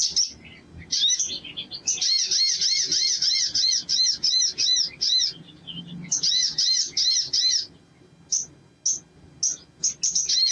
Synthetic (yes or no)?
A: no